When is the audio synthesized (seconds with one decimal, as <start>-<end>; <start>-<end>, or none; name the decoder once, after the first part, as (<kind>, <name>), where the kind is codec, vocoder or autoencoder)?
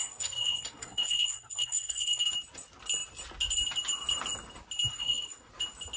0.0-2.2 (codec, SNAC); 4.9-5.5